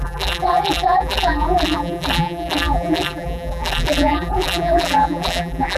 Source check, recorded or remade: remade